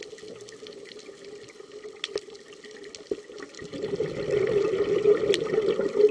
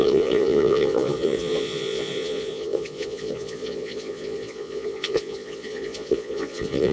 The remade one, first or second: second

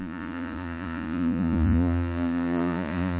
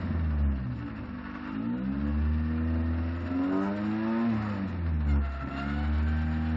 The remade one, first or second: first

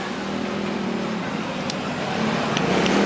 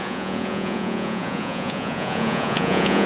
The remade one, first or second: second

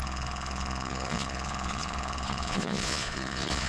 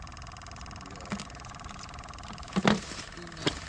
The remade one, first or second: first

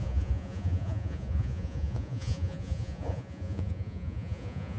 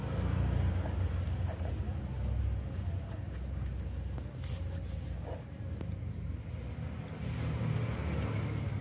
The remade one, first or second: first